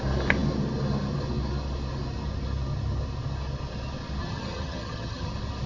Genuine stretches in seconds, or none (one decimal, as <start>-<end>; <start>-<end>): 0.0-4.2; 5.3-5.7